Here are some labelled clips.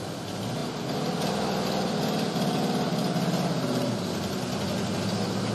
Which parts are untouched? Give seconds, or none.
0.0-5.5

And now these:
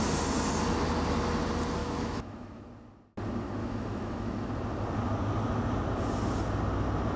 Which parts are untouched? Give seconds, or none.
0.0-1.8; 2.6-3.6; 4.5-7.2

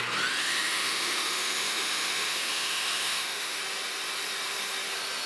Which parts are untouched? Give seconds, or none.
0.0-0.4; 3.6-5.3

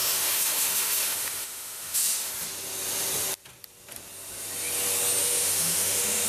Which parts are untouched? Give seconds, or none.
2.3-5.2